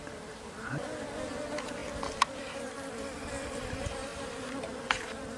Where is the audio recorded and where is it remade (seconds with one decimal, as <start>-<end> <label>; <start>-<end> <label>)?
0.0-5.4 recorded